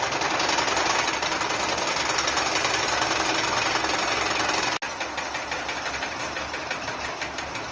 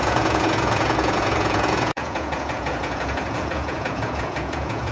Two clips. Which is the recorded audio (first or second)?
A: first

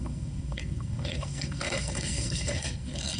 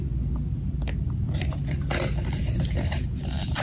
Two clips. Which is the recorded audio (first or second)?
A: second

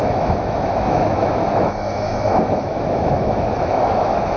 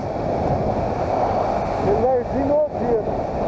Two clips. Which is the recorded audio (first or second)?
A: second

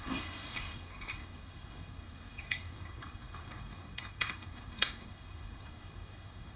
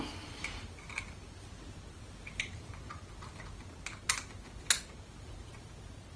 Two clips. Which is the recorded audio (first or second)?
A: second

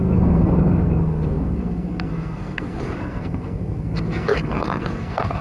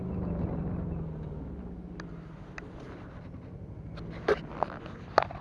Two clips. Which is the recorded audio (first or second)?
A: second